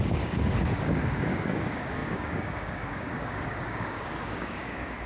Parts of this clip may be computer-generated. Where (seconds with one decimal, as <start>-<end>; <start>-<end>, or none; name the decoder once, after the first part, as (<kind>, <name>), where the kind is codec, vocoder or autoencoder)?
0.0-5.1 (codec, DAC)